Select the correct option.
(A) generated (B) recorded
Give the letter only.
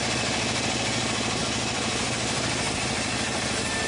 B